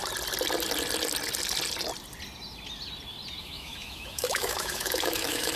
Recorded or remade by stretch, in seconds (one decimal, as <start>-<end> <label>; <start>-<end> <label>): 0.0-3.4 recorded; 3.4-5.6 remade